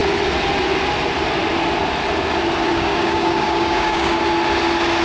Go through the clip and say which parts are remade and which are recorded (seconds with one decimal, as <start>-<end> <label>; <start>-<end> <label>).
0.0-2.7 recorded; 2.7-4.2 remade; 4.2-5.0 recorded